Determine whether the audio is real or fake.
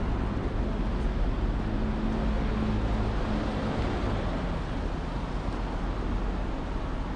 real